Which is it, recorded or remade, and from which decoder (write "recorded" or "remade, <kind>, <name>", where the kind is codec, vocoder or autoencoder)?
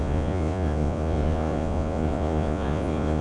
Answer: remade, vocoder, Vocos